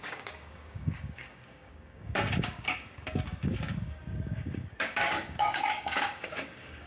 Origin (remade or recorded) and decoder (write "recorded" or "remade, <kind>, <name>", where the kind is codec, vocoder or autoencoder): remade, codec, DAC